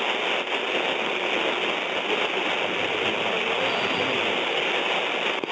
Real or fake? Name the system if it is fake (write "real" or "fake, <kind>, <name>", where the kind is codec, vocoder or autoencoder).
real